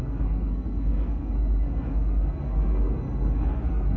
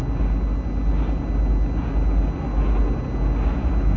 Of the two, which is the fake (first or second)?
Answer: first